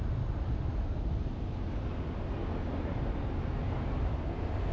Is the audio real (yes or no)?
yes